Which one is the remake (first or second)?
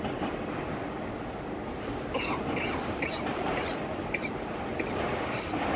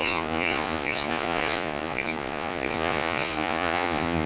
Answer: second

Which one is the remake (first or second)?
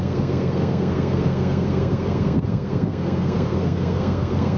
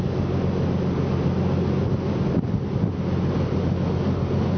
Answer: first